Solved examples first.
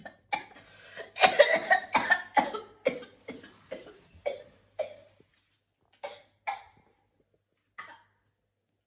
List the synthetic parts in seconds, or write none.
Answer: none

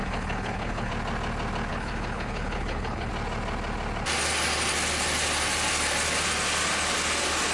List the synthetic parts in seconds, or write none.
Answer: 0.0-0.9; 1.7-3.1

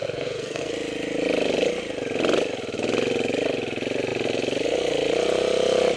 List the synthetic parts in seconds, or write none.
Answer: 0.0-0.7

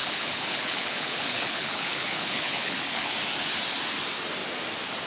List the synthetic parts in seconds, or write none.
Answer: 0.0-3.1

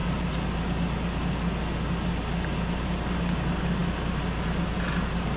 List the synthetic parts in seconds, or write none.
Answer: none

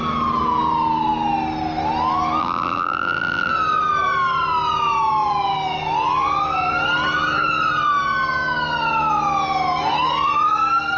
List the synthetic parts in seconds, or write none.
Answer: 2.4-3.5